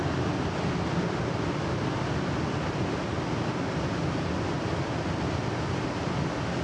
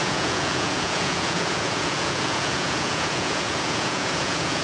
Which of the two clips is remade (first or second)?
second